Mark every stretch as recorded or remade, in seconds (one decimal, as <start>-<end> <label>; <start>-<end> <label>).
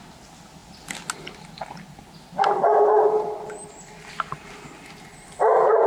0.0-5.9 recorded